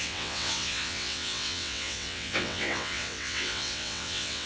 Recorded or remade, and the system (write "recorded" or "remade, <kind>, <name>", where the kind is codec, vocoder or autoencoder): remade, vocoder, WaveNeXt